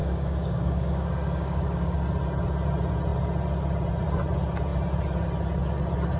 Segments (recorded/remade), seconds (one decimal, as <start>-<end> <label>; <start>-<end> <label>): 0.0-2.1 remade; 2.1-6.2 recorded